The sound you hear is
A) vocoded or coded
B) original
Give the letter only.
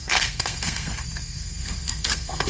A